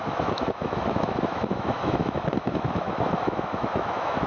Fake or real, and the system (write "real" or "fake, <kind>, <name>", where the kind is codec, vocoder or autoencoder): fake, autoencoder, DAC-VAE